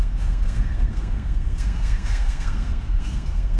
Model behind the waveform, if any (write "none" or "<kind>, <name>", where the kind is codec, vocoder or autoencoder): codec, SNAC